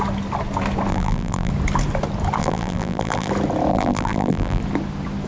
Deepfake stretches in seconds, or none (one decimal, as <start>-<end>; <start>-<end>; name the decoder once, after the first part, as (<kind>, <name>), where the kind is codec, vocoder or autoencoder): 0.9-1.5 (vocoder, BigVGAN v2); 2.4-3.3; 3.7-4.6